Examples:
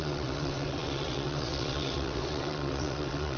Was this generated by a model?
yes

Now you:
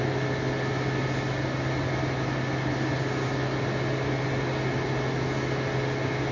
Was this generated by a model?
no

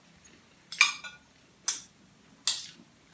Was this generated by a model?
no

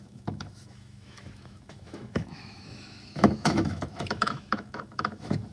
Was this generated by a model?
yes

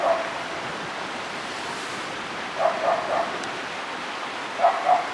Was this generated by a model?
no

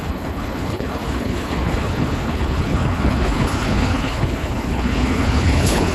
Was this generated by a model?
yes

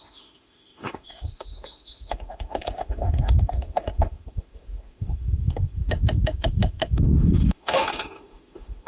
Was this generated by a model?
yes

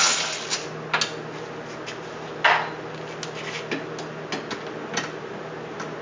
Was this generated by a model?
no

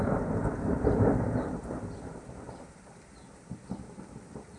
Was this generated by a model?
no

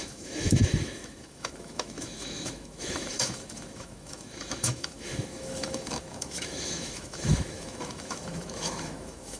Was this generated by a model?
yes